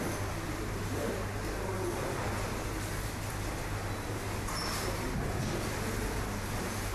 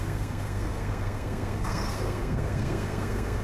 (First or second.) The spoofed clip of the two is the second